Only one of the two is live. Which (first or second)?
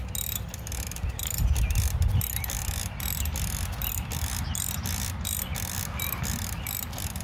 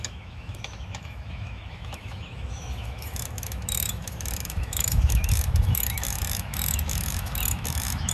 first